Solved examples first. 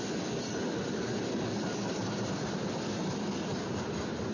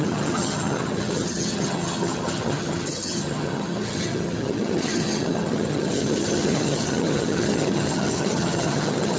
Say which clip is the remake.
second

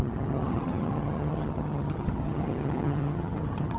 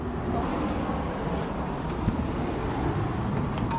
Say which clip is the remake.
first